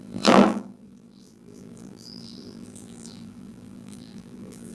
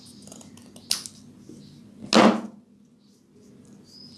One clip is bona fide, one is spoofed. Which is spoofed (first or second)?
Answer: first